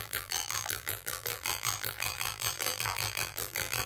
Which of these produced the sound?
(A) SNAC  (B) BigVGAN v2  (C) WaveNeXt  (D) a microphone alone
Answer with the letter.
B